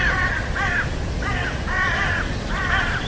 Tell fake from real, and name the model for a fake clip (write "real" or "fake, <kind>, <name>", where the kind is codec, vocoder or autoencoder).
real